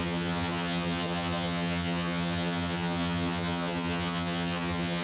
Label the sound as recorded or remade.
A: remade